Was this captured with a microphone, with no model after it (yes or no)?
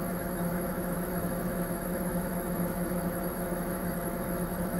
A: no